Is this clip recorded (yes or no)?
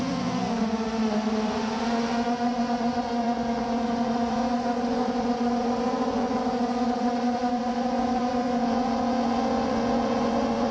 no